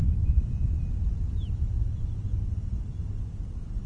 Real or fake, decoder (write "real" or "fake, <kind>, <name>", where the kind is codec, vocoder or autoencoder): real